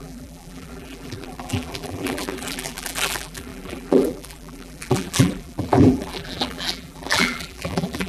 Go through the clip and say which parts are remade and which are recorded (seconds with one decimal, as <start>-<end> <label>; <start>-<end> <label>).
0.0-8.1 remade